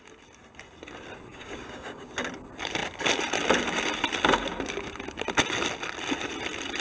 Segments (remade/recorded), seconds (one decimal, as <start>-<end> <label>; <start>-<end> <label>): 0.0-1.3 recorded; 1.3-2.1 remade; 2.1-6.8 recorded